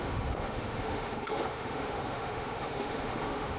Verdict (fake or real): fake